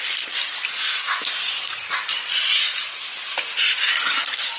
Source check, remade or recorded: recorded